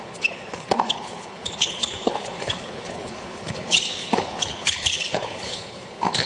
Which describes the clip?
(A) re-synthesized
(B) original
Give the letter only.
A